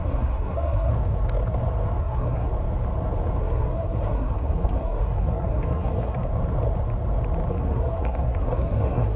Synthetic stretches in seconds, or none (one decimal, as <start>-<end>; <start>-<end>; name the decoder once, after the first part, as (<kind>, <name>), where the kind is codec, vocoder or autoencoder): 0.0-0.9 (codec, SNAC); 2.0-2.5; 3.4-6.3; 7.5-9.2